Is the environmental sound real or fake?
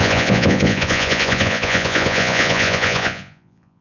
fake